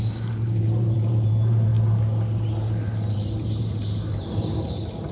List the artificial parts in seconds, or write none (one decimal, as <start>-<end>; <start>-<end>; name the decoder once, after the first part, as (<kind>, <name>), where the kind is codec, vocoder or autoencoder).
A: 0.0-1.7 (vocoder, BigVGAN v2); 2.6-5.1